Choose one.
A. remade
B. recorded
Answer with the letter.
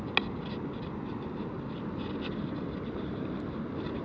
B